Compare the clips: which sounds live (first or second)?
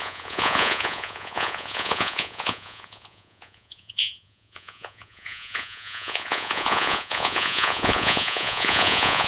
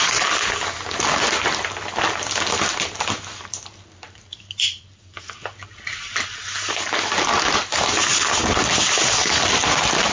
second